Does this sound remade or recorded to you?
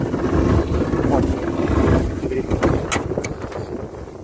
recorded